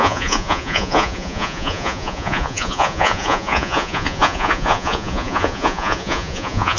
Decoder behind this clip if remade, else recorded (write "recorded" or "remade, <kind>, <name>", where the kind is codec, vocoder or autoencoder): remade, vocoder, Vocos